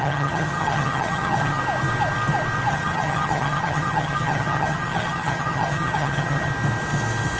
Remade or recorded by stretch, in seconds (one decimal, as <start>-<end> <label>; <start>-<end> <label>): 0.0-1.6 remade; 1.6-2.7 recorded; 2.7-6.5 remade; 6.5-7.4 recorded